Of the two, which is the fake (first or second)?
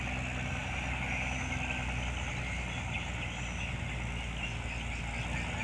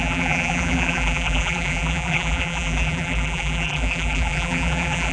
second